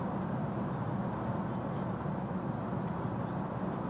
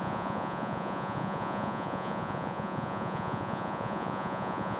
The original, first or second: first